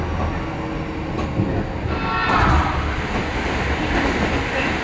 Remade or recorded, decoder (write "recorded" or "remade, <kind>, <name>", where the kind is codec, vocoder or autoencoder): recorded